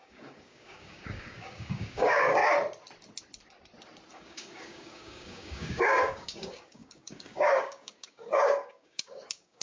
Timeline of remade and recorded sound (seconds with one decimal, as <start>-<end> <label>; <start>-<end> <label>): 0.0-2.4 remade; 2.4-4.1 recorded; 4.1-9.6 remade